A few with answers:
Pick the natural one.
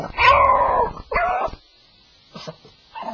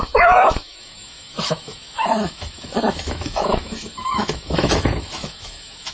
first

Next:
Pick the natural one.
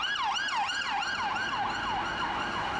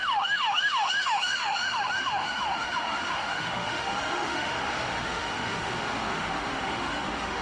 first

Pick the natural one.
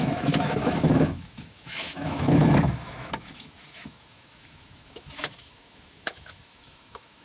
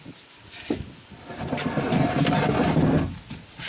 second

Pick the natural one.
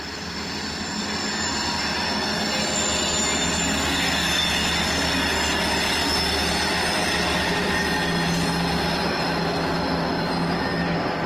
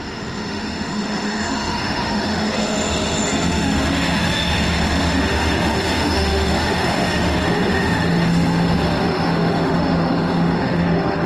first